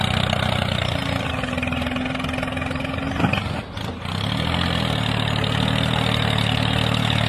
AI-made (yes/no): no